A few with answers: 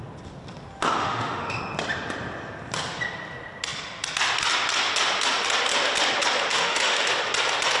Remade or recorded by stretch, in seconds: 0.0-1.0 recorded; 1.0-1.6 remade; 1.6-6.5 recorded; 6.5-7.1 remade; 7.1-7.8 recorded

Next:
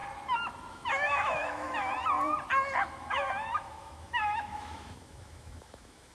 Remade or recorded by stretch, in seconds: 0.0-0.7 recorded; 0.7-1.9 remade; 1.9-2.8 recorded; 2.8-6.1 remade

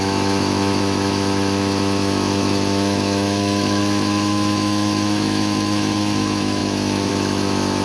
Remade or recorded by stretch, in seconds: 0.0-7.8 remade

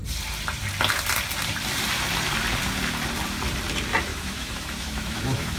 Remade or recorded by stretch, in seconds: 0.0-4.1 recorded; 4.1-5.6 remade

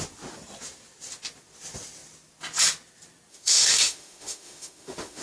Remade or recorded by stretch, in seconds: 0.0-3.3 recorded; 3.3-5.2 remade